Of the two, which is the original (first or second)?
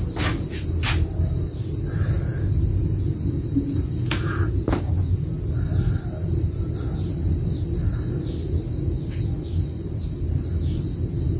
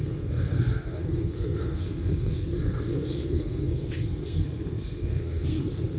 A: first